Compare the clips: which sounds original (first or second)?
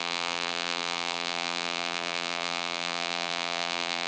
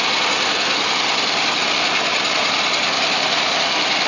second